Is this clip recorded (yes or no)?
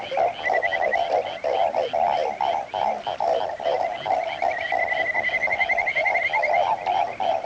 yes